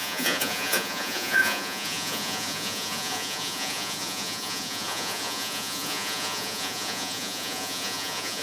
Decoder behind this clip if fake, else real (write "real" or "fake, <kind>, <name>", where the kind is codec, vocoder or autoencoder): fake, vocoder, Vocos